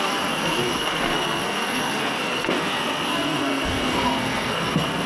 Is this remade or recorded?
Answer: remade